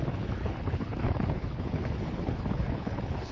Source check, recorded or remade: remade